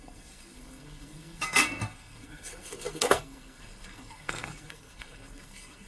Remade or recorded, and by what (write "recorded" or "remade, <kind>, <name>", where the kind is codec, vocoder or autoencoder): remade, codec, SNAC